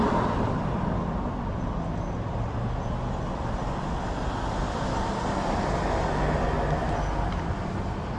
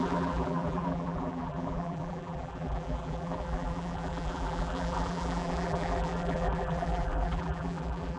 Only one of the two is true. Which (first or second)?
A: first